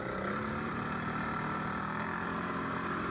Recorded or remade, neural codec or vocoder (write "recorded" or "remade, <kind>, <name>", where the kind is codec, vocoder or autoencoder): recorded